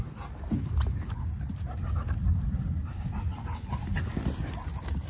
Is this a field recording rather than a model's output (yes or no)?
yes